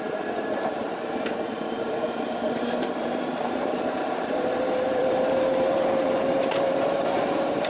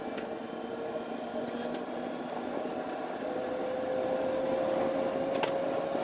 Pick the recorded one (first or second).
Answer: second